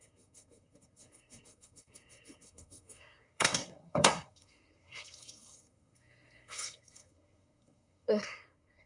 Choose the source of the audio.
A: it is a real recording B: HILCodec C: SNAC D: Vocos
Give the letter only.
C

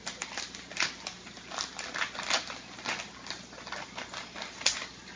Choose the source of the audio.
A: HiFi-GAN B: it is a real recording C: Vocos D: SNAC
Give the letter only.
B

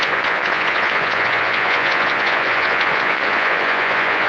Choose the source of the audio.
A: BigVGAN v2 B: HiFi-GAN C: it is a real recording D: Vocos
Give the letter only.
D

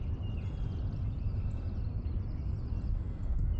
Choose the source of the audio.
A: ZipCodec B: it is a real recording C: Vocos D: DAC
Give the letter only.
B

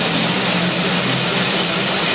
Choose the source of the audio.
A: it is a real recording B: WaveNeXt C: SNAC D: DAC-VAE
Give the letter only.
A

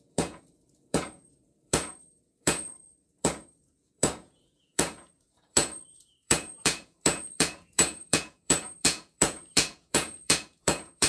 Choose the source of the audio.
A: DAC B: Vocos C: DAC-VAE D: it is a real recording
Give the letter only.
B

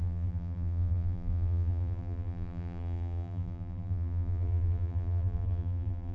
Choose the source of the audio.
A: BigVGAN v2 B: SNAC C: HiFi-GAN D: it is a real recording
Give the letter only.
A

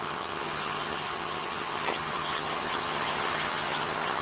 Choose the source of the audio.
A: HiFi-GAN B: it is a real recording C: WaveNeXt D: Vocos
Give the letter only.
A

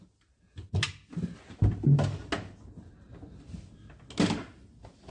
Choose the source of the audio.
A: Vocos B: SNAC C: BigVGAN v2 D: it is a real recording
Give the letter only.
D